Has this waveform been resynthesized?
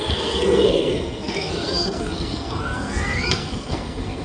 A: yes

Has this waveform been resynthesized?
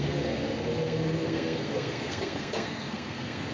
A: yes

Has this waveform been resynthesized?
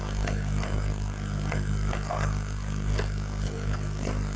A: yes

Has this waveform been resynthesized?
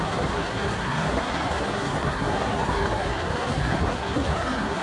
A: yes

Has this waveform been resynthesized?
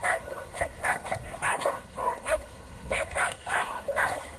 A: yes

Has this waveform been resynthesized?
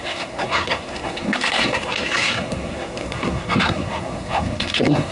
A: yes